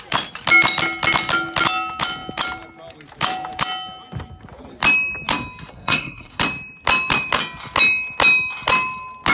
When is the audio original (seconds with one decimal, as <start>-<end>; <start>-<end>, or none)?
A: 0.0-5.7; 6.4-9.3